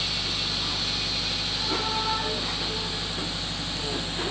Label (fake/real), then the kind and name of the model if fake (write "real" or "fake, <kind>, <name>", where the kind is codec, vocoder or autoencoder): real